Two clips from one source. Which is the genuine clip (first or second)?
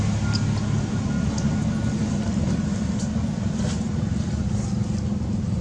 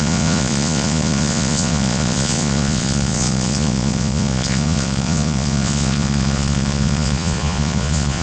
first